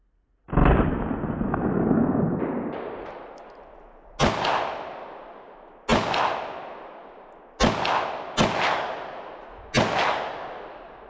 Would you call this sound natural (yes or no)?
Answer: yes